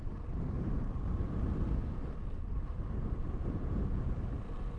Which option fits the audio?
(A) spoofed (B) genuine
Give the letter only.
B